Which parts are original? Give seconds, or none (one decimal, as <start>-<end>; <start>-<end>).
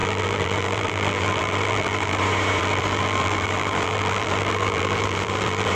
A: 2.2-2.6